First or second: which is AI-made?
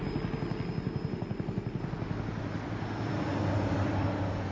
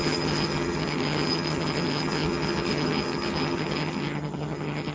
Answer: second